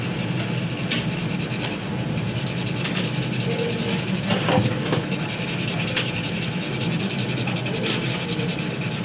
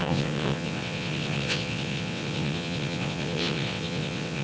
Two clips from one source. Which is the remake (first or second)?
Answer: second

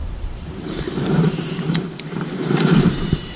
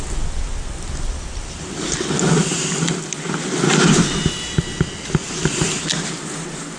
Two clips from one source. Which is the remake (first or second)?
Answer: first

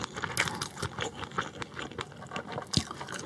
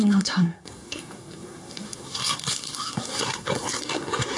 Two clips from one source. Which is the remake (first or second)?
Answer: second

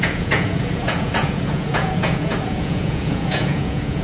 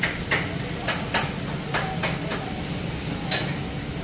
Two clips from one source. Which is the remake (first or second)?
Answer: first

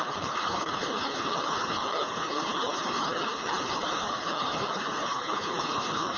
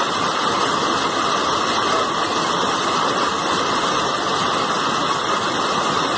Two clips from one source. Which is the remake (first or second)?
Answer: first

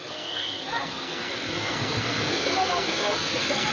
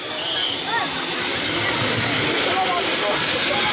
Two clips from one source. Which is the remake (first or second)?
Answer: first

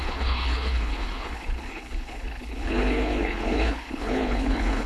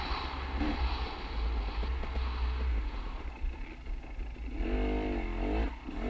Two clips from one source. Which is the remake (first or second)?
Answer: first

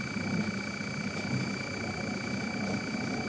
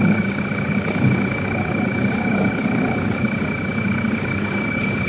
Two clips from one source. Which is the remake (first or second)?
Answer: second